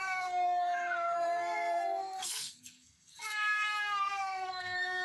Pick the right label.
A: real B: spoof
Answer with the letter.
B